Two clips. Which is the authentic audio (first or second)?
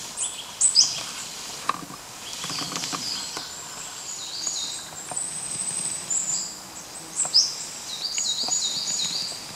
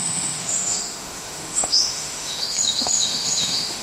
first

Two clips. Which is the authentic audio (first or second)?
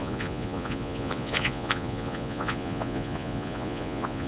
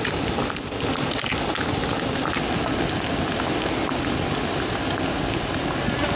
second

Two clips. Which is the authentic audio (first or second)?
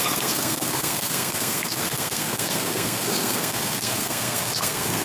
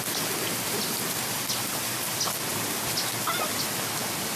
second